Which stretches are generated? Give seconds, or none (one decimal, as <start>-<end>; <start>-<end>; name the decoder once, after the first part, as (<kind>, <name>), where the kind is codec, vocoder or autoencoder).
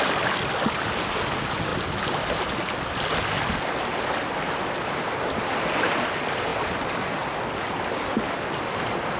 none